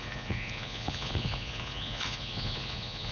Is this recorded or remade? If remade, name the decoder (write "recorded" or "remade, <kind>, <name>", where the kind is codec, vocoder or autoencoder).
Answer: remade, vocoder, Vocos